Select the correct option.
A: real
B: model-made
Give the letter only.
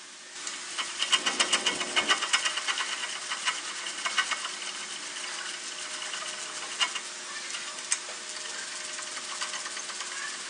A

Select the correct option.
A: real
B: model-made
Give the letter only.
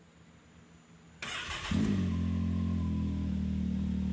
A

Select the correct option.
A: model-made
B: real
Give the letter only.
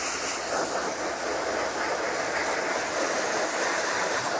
B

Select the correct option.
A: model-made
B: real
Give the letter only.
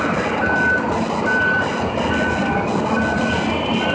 B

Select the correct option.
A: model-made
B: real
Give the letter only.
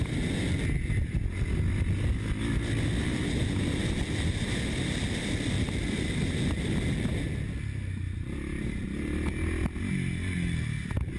B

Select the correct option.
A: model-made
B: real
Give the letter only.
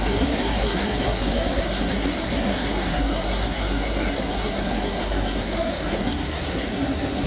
A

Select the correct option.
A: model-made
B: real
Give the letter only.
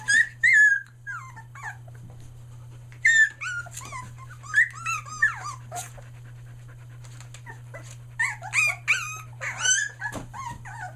B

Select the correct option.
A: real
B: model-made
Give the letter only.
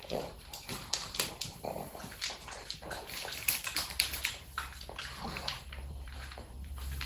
B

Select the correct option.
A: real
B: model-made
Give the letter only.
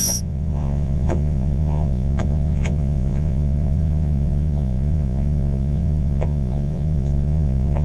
B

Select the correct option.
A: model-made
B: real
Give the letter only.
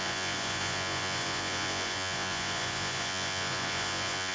A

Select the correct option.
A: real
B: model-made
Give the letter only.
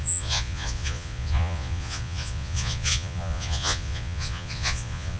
B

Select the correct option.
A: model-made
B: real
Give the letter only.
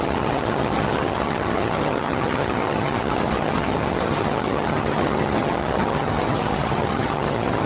A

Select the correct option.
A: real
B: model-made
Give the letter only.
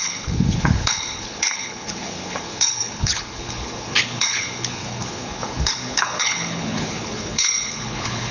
B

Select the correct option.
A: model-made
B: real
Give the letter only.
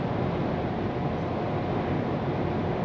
B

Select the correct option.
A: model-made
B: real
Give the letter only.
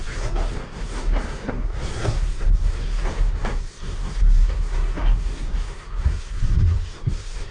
A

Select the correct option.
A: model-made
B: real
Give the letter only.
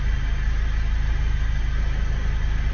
B